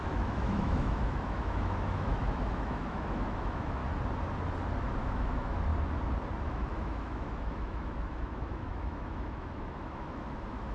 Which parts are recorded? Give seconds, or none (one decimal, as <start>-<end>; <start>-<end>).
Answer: 3.8-5.0; 5.7-6.4

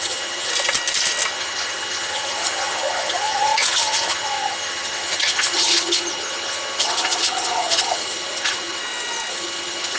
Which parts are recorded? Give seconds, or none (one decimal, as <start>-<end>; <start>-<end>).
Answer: 0.5-1.3; 8.8-9.3